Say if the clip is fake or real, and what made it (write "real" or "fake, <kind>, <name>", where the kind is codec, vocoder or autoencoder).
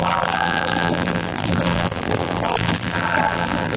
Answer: fake, vocoder, BigVGAN v2